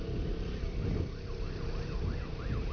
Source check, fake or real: real